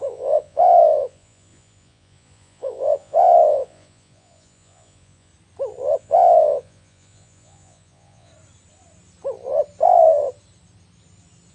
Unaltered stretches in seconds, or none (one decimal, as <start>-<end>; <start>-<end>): 5.3-6.0; 8.3-11.5